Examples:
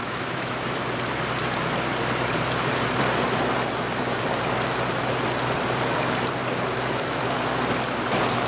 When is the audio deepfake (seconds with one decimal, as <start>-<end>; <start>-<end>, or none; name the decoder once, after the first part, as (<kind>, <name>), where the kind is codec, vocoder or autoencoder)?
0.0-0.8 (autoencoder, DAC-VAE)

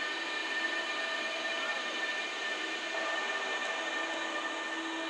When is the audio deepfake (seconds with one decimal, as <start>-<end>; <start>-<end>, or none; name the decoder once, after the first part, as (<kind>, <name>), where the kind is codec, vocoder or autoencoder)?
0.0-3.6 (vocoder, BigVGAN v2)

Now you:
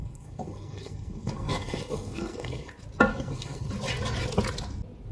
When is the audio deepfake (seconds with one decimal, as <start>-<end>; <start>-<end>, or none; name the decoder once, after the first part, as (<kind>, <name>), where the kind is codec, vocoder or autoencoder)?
0.0-2.7 (codec, SNAC); 3.1-3.7

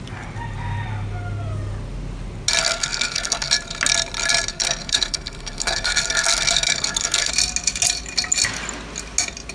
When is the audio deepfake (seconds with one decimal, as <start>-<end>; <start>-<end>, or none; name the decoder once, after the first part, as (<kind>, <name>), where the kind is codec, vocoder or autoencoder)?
2.6-3.5 (codec, SNAC); 4.5-7.3